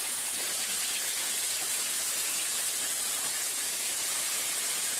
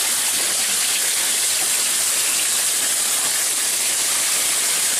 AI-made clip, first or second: first